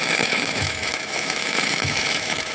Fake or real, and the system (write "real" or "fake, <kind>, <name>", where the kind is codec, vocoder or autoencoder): fake, autoencoder, DAC-VAE